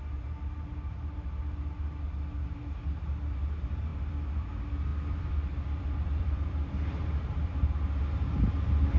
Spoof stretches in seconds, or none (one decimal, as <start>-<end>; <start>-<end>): 3.9-4.5; 4.9-8.0